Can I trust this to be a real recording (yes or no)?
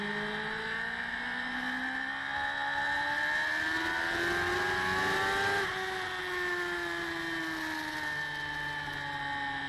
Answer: yes